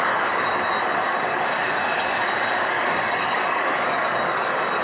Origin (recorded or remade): remade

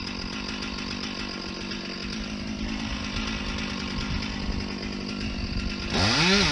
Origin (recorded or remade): recorded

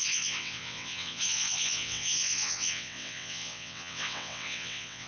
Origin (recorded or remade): remade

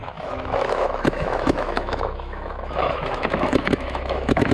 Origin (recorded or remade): remade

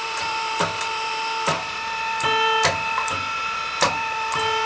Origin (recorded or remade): remade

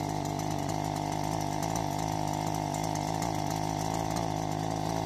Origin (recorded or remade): recorded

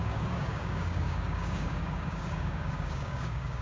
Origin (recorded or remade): remade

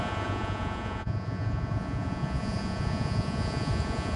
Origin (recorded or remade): remade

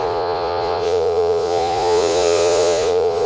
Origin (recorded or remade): remade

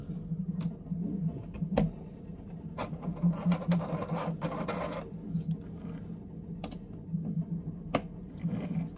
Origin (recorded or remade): recorded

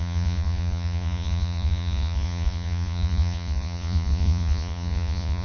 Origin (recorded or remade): remade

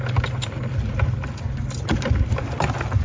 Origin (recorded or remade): recorded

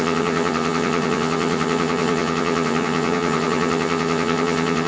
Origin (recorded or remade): remade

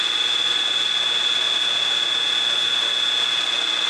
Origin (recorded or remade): recorded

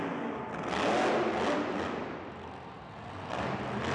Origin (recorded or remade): recorded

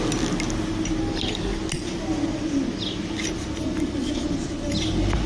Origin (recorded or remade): recorded